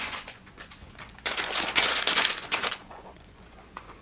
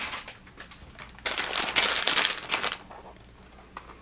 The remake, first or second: first